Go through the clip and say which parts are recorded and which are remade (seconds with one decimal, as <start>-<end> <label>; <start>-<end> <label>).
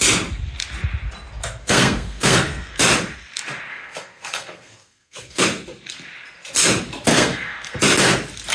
0.0-1.6 recorded; 1.6-2.8 remade; 2.8-3.7 recorded; 3.7-5.4 remade; 5.4-7.1 recorded; 7.1-7.8 remade; 7.8-8.5 recorded